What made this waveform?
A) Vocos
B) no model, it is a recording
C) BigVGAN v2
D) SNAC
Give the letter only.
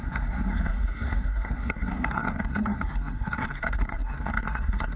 D